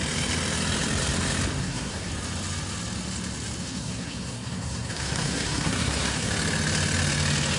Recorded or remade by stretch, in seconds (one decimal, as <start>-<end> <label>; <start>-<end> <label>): 0.0-1.6 recorded; 1.6-2.1 remade; 2.1-3.6 recorded; 3.6-6.3 remade; 6.3-7.6 recorded